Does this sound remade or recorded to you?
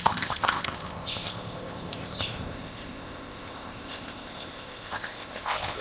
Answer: remade